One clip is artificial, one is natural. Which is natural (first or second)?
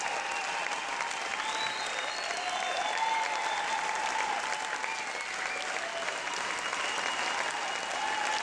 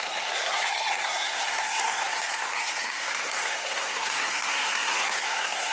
first